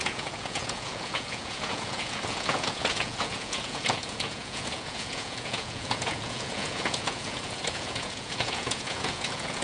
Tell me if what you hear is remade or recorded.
remade